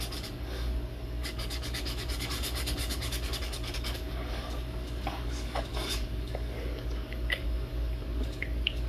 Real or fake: fake